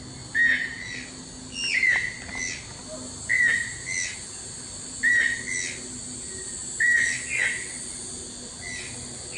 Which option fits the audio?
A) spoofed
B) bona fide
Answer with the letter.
B